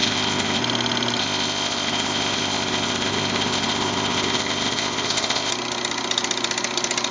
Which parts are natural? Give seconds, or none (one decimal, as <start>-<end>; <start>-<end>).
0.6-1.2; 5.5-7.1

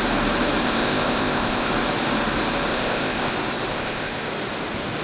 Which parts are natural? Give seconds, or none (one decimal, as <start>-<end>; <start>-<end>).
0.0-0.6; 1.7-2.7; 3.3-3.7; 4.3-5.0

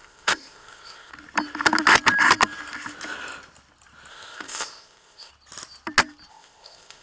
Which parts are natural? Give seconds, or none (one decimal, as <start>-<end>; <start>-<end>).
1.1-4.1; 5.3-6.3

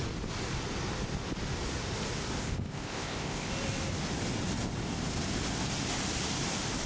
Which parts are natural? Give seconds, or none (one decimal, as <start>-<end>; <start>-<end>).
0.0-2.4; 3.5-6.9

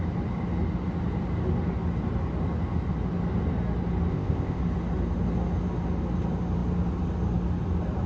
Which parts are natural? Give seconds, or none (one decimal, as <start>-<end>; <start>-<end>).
0.0-4.1; 4.6-8.1